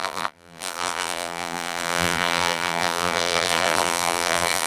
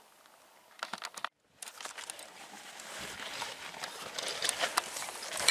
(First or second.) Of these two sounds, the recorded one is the second